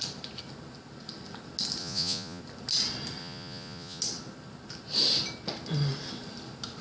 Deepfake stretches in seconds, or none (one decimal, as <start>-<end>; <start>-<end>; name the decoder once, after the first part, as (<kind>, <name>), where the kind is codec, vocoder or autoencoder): 1.8-2.4 (vocoder, Vocos); 3.2-4.0